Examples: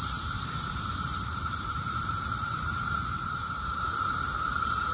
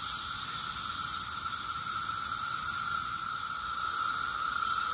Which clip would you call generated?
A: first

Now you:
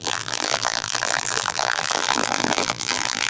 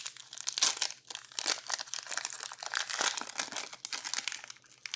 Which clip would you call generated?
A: first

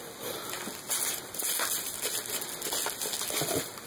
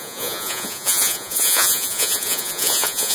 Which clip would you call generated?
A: second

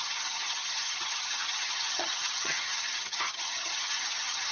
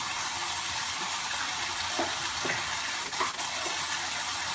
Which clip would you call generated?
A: first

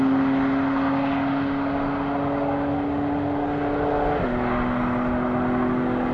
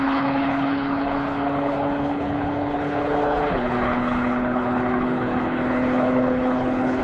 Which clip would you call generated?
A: second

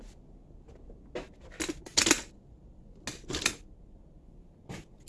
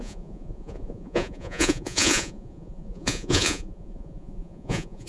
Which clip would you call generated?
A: second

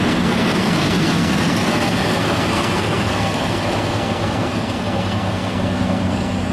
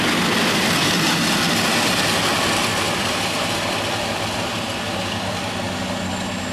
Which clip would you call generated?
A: first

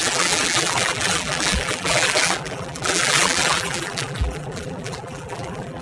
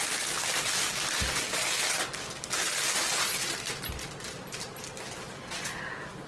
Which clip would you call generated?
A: first